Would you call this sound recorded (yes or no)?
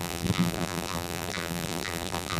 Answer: no